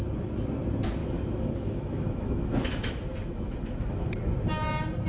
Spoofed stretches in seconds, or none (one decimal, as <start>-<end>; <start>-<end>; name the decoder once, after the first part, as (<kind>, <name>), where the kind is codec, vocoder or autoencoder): 1.0-4.1 (autoencoder, DAC-VAE)